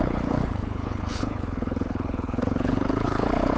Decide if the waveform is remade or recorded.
remade